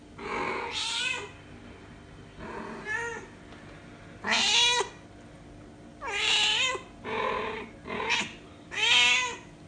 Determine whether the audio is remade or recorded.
recorded